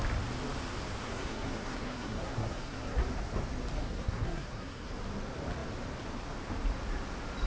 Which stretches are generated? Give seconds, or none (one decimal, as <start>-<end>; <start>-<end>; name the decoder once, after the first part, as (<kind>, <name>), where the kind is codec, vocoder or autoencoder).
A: 1.0-3.0 (codec, SNAC); 3.8-4.9